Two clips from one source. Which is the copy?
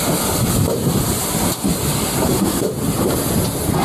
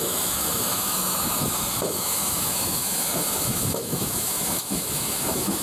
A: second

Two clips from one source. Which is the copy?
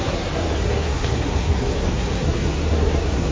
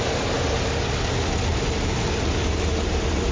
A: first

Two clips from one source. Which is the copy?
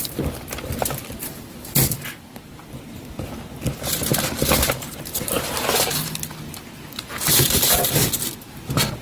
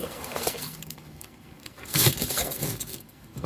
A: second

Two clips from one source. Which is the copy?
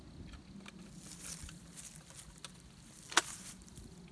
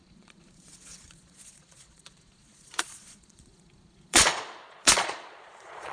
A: second